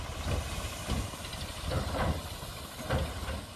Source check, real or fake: real